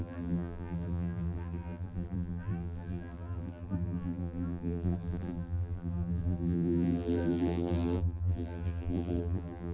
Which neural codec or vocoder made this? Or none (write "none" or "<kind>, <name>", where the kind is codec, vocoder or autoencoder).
vocoder, BigVGAN v2